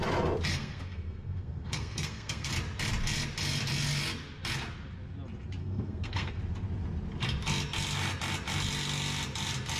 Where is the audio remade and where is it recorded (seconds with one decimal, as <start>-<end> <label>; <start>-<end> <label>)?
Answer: 0.0-0.5 recorded; 0.5-2.5 remade; 2.5-5.6 recorded; 5.6-6.4 remade; 6.4-9.8 recorded

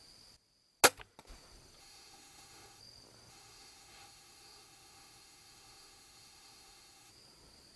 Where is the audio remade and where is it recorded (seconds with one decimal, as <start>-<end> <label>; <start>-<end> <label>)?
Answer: 0.0-1.8 recorded; 1.8-2.8 remade; 2.8-3.3 recorded; 3.3-7.1 remade; 7.1-7.8 recorded

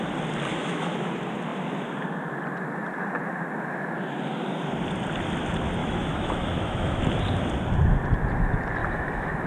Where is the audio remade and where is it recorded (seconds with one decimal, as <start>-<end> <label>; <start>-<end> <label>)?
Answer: 0.0-0.5 recorded; 0.5-1.1 remade; 1.1-5.8 recorded; 5.8-7.0 remade; 7.0-8.8 recorded; 8.8-9.5 remade